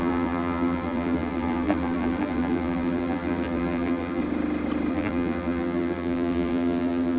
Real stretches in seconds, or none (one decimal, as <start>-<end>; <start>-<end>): 4.2-4.9